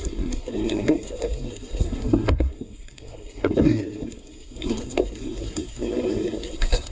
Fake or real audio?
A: fake